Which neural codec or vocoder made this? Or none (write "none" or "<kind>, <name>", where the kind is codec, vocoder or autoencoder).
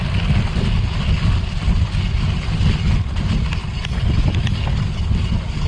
none